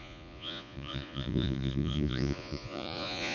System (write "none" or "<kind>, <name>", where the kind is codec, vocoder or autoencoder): vocoder, Vocos